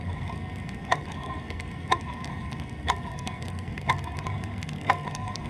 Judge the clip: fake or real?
fake